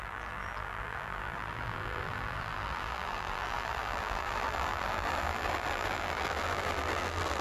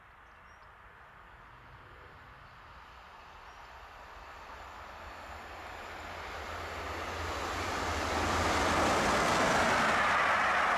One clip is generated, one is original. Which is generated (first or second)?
first